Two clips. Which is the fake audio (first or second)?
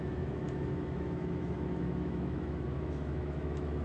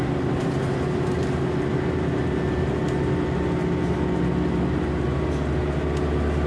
first